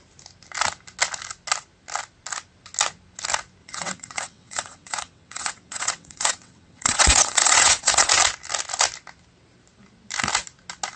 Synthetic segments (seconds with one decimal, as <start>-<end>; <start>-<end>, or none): 3.6-8.1

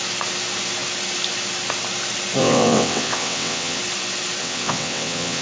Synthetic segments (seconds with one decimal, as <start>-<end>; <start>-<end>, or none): 2.4-3.8; 4.4-5.4

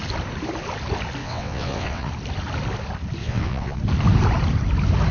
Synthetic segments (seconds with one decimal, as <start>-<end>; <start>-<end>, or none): 1.2-2.1; 3.2-3.8

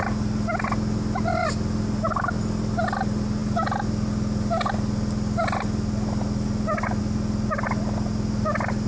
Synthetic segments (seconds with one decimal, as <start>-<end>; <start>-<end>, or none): none